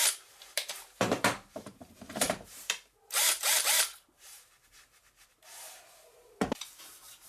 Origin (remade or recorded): remade